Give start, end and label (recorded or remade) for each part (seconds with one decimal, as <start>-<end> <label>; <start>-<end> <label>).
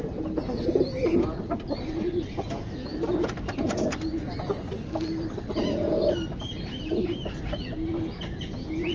0.0-8.9 recorded